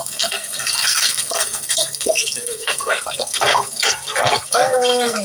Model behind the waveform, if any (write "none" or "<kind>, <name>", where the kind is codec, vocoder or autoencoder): codec, SNAC